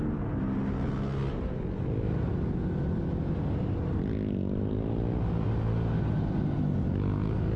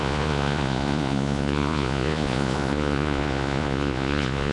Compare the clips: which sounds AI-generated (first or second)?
second